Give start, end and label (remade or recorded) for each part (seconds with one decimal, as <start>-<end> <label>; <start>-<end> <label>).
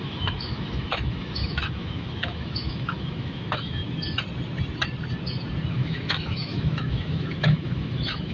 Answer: 0.0-3.8 remade; 3.8-5.7 recorded; 5.7-8.3 remade